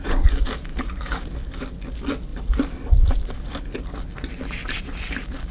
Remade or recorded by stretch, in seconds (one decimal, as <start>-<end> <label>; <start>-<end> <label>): 0.0-0.7 recorded; 0.7-1.3 remade; 1.3-2.3 recorded; 2.3-3.6 remade; 3.6-4.6 recorded; 4.6-5.5 remade

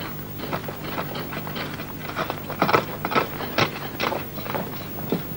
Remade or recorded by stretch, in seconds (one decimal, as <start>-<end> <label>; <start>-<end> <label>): 0.0-5.4 recorded